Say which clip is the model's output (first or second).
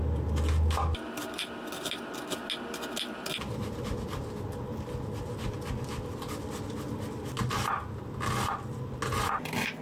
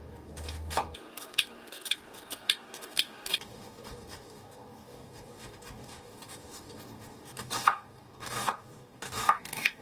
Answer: second